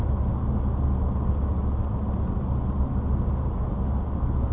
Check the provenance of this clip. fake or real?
real